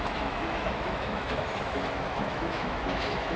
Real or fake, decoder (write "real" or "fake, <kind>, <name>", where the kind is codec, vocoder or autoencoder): fake, autoencoder, DAC-VAE